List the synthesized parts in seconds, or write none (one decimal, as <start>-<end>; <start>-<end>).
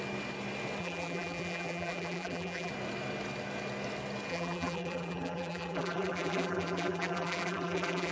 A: 0.8-2.7; 4.3-8.1